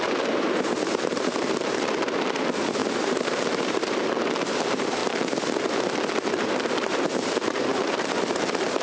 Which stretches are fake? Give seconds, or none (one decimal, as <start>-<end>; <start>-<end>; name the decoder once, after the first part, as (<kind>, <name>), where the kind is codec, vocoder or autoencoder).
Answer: 0.0-5.0 (vocoder, BigVGAN v2); 6.3-8.8